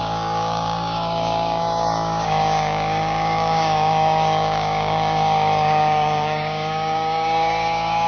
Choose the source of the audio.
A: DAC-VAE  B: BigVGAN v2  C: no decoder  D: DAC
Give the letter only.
D